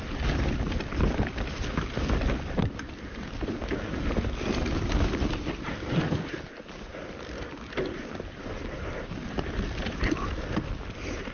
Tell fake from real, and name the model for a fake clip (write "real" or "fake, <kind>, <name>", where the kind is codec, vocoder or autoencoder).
real